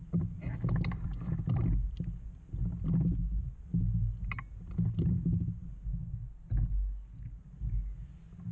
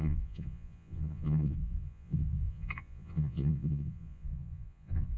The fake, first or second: second